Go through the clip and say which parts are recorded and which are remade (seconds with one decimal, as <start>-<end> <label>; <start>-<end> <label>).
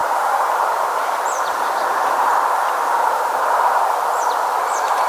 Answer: 0.0-5.1 remade